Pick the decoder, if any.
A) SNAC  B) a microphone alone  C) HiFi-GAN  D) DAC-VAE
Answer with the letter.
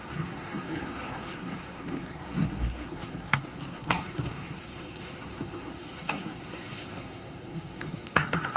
A